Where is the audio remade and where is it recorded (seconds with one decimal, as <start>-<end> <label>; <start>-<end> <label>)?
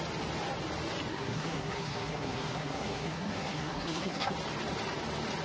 0.0-1.1 recorded; 1.1-4.3 remade; 4.3-5.4 recorded